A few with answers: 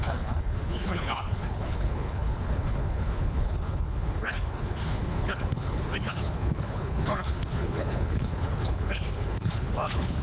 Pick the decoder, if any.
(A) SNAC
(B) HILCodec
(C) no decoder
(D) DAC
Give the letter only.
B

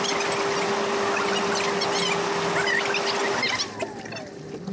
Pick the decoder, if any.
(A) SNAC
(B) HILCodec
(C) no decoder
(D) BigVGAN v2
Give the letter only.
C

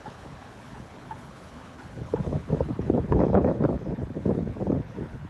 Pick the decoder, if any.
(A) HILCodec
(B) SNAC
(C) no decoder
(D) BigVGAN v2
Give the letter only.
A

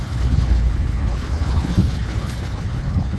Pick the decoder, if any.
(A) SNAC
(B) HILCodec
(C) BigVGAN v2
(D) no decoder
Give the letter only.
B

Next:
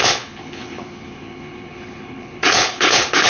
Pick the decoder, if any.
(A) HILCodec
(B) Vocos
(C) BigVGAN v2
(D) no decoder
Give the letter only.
A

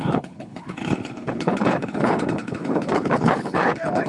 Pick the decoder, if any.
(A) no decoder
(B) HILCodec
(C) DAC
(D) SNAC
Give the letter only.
B